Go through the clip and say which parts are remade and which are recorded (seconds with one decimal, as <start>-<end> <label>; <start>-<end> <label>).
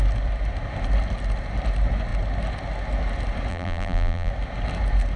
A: 0.0-3.5 recorded; 3.5-4.3 remade; 4.3-5.2 recorded